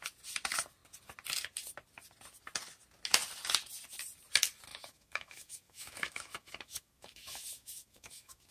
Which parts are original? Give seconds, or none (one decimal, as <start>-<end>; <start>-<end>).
0.0-4.7